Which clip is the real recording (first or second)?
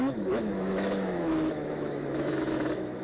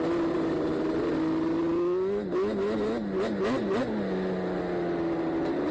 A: second